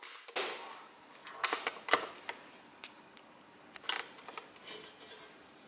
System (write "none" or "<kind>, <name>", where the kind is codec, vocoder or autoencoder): none